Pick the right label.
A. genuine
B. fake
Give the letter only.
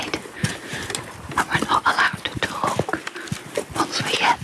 A